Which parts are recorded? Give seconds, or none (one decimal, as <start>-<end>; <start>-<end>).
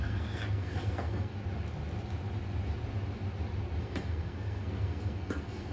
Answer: 1.3-3.8